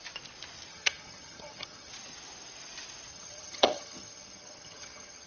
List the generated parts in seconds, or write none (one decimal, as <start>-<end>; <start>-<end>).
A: 0.7-1.9; 3.1-5.3